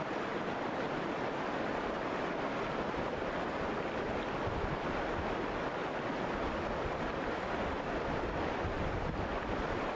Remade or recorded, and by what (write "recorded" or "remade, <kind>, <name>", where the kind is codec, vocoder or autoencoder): recorded